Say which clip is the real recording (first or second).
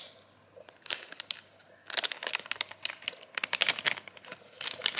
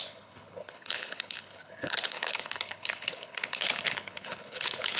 first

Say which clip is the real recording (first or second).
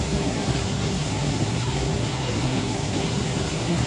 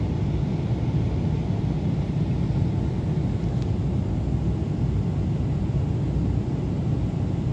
second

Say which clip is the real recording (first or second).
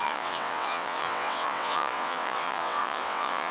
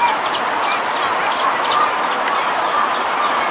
second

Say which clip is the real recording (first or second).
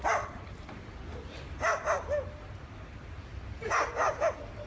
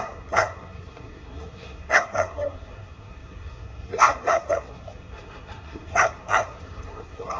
first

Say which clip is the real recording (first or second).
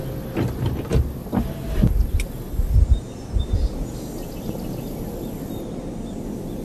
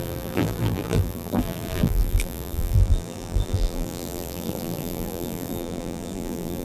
first